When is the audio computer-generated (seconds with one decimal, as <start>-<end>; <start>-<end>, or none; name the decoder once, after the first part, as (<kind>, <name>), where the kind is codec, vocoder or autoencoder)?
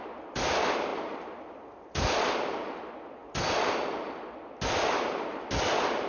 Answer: none